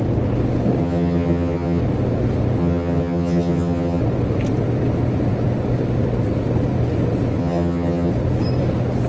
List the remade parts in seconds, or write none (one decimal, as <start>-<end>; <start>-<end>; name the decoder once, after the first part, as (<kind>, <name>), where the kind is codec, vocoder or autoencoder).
0.8-1.8 (vocoder, HiFi-GAN); 2.6-4.0; 7.4-8.1